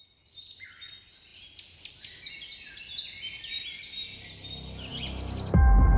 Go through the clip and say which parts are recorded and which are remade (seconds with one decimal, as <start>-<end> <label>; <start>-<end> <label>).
0.0-6.0 recorded